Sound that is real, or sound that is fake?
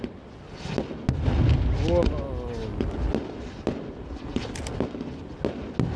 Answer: real